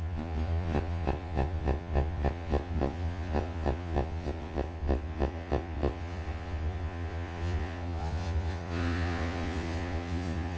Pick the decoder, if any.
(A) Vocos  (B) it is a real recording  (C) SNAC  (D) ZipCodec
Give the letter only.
A